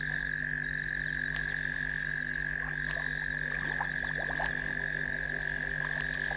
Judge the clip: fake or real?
real